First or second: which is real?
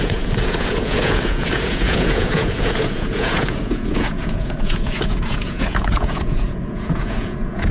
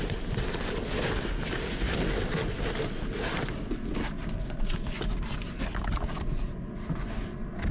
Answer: second